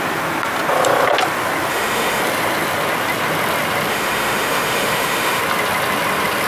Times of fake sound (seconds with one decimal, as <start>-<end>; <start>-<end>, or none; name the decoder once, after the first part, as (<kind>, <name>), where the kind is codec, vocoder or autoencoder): 1.7-2.2 (autoencoder, DAC-VAE); 3.9-5.4